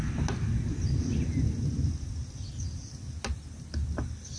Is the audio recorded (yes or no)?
yes